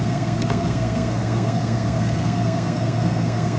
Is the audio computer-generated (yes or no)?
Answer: yes